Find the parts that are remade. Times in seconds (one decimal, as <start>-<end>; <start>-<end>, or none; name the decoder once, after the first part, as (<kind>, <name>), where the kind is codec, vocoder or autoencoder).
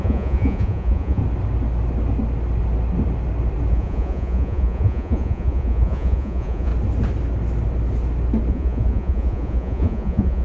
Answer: 0.0-1.2 (vocoder, Vocos); 3.7-6.7; 8.5-10.4